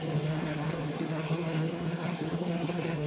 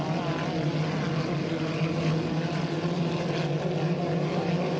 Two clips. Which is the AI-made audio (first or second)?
first